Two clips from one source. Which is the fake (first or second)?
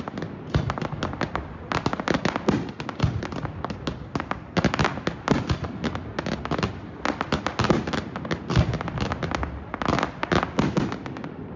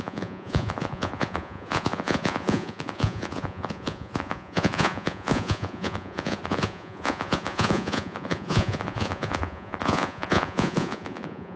second